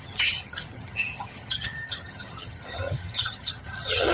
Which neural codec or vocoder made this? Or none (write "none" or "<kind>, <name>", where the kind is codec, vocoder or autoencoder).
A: vocoder, HiFi-GAN